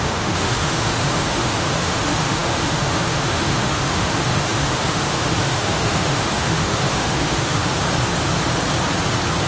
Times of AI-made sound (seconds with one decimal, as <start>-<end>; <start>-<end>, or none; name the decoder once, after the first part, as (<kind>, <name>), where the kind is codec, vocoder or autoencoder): 0.0-7.7 (autoencoder, DAC-VAE)